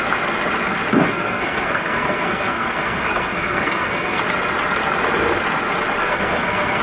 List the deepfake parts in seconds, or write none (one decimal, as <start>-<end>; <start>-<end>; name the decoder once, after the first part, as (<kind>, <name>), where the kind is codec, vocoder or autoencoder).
0.9-4.2 (codec, SNAC); 6.0-6.8